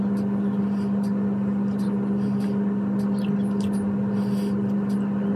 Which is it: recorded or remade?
recorded